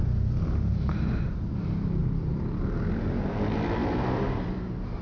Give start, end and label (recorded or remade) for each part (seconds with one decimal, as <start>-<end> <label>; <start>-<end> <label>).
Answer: 0.0-0.7 remade; 0.7-2.0 recorded; 2.0-2.6 remade; 2.6-3.8 recorded; 3.8-5.0 remade